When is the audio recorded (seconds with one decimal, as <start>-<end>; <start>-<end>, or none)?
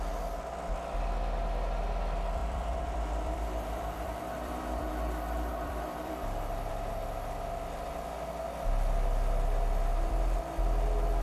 0.0-2.4; 4.9-5.5; 6.7-11.2